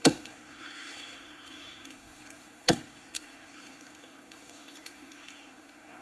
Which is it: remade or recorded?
remade